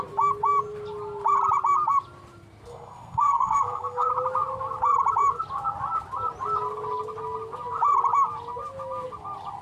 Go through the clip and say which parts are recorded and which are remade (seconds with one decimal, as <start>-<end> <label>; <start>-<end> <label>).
0.0-2.7 recorded; 2.7-4.1 remade; 4.1-9.6 recorded